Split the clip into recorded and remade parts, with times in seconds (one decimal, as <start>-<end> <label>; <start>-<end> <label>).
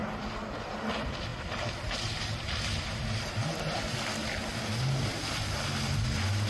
0.0-6.5 recorded